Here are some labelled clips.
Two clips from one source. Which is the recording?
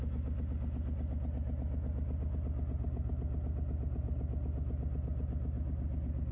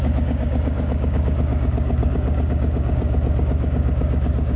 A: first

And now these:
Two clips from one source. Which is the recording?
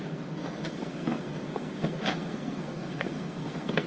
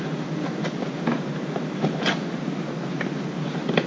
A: second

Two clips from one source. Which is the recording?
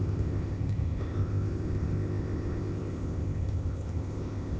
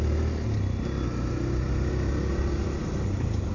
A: second